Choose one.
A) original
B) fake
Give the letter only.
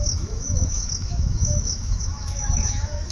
B